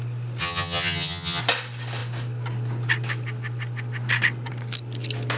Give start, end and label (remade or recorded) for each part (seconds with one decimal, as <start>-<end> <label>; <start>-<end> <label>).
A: 0.0-0.4 recorded; 0.4-1.4 remade; 1.4-5.4 recorded